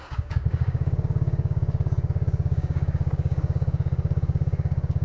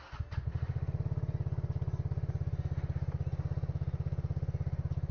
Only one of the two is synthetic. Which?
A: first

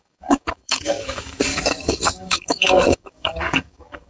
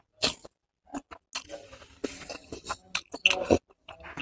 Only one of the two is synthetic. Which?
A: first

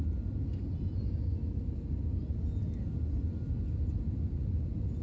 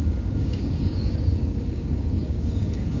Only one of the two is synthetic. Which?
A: second